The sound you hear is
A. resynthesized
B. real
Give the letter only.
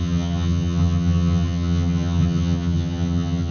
A